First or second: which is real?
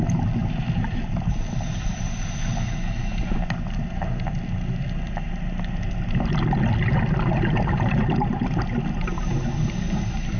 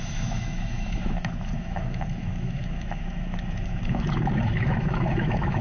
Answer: first